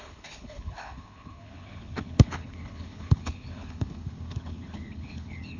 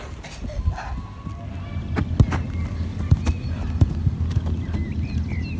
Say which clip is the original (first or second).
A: second